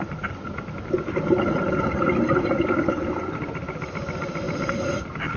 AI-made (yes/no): no